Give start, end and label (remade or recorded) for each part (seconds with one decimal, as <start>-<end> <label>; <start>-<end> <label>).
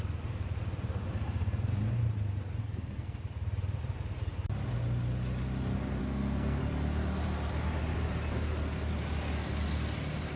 0.0-2.6 recorded; 2.6-3.2 remade; 3.2-6.0 recorded; 6.0-6.6 remade; 6.6-10.4 recorded